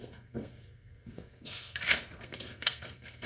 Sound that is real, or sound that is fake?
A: fake